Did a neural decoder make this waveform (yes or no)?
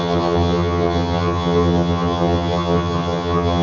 yes